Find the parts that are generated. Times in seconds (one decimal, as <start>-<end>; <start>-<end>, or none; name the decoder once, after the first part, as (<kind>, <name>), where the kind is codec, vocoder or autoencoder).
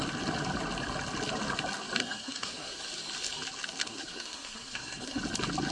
2.0-2.8 (codec, SNAC); 3.8-5.2